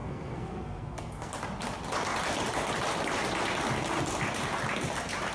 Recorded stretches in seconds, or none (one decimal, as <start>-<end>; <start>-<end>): 1.3-5.3